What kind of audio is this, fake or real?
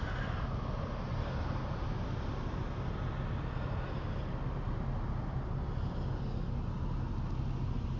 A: real